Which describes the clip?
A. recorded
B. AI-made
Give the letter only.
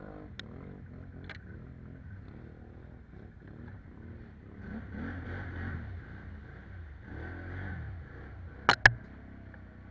A